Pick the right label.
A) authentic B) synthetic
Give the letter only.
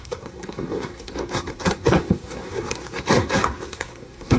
B